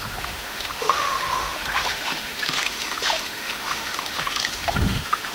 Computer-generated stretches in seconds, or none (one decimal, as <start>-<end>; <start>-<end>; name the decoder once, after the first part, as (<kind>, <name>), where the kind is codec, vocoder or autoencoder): 0.0-5.3 (autoencoder, DAC-VAE)